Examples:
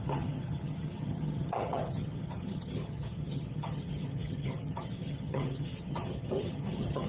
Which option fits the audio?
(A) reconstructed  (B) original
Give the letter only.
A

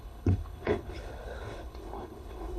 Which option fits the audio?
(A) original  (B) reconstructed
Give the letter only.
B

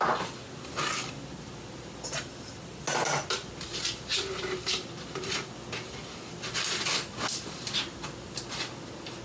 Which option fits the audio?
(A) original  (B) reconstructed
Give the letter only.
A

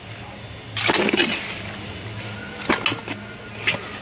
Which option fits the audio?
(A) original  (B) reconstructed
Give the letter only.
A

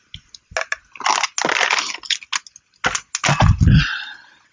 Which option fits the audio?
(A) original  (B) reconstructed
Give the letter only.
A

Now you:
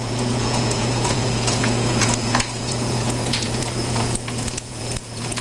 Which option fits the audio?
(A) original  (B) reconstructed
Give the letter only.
B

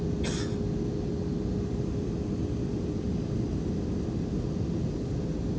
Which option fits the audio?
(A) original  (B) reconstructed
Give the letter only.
A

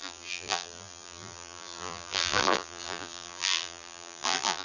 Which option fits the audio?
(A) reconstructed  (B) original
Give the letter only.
A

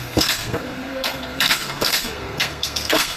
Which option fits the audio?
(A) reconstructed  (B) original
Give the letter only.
A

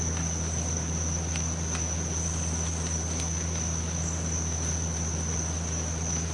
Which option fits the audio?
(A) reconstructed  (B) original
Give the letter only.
B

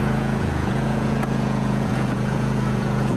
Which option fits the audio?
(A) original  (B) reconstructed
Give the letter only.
B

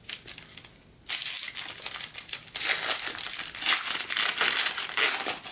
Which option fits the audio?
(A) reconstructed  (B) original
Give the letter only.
B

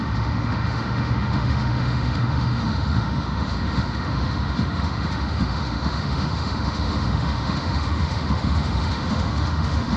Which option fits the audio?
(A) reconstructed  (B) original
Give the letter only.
A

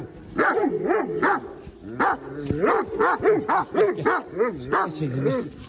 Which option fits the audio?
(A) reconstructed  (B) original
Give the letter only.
B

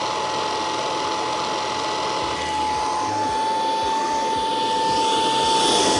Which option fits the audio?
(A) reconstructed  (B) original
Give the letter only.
B